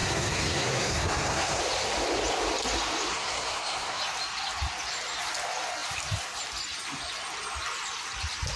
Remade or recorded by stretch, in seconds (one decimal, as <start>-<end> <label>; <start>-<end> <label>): 0.0-1.6 remade; 1.6-3.1 recorded; 3.1-4.0 remade; 4.0-8.6 recorded